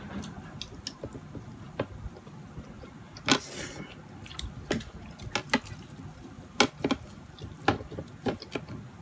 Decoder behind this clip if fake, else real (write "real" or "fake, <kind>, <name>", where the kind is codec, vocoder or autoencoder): real